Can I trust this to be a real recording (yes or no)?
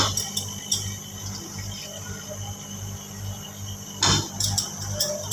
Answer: yes